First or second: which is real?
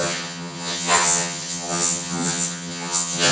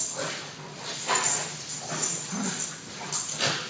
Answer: second